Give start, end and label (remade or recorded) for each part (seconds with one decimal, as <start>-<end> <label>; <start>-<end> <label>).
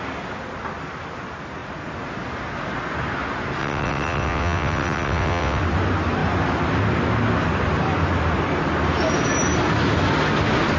0.0-3.6 recorded; 3.6-5.6 remade; 5.6-10.8 recorded